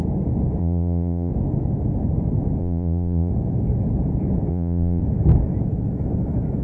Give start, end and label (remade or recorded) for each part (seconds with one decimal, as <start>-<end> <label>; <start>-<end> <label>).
0.0-0.6 recorded; 0.6-1.3 remade; 1.3-2.6 recorded; 2.6-3.3 remade; 3.3-4.5 recorded; 4.5-5.0 remade; 5.0-6.6 recorded